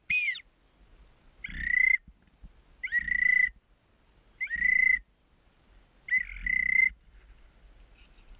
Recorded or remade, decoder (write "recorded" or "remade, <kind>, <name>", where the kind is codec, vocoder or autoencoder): recorded